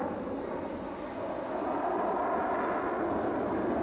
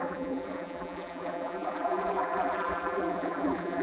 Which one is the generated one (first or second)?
second